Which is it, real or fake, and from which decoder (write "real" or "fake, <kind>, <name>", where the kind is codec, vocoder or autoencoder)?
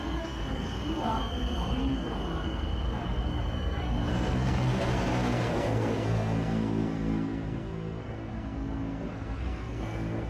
fake, codec, SNAC